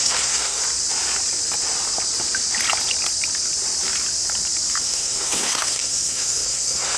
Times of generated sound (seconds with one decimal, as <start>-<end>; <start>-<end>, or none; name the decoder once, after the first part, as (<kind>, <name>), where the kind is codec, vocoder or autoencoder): 0.0-0.6 (codec, SNAC); 4.8-7.0